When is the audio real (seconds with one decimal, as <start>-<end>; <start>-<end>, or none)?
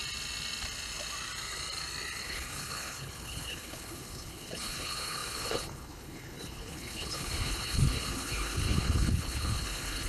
0.0-2.2